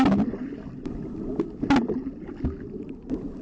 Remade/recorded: recorded